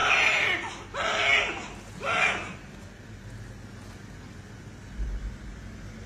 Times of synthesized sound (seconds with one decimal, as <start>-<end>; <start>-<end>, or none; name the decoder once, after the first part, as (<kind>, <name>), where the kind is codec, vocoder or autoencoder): 0.0-0.7 (vocoder, BigVGAN v2)

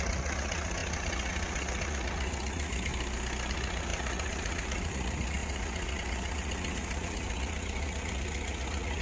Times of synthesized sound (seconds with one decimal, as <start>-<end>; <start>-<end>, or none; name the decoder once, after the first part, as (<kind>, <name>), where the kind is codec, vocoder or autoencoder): 0.0-2.9 (vocoder, Vocos); 3.5-9.0

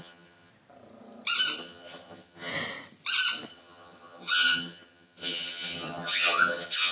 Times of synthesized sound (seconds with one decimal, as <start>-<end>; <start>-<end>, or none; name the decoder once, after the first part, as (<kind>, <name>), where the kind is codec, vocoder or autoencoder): 0.0-0.5 (vocoder, HiFi-GAN); 1.6-2.5; 3.5-6.9

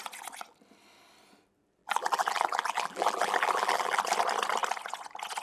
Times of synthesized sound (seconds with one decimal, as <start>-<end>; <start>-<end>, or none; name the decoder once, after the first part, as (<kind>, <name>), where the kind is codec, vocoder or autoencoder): 1.8-4.0 (vocoder, BigVGAN v2)

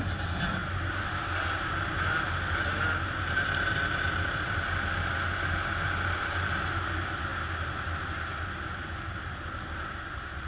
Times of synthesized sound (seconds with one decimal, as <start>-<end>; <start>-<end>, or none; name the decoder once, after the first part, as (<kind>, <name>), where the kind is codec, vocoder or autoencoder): none